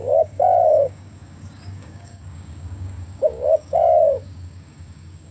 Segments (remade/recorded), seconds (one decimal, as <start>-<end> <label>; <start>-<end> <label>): 0.0-5.3 remade